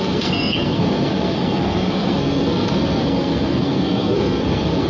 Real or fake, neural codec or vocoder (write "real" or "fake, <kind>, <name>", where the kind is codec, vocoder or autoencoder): fake, codec, SNAC